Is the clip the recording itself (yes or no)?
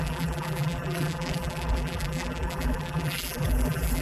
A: no